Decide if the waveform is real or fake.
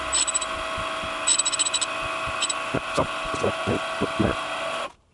real